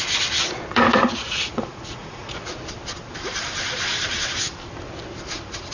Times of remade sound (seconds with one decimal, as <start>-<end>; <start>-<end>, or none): 0.4-2.5